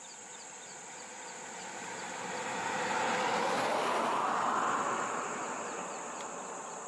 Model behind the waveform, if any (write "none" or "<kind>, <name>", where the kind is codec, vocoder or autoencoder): none